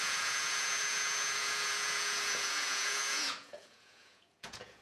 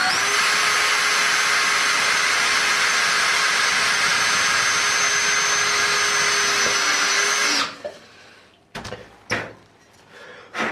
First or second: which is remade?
first